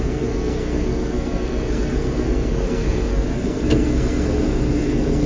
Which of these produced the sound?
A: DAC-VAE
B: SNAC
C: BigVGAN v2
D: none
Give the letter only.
B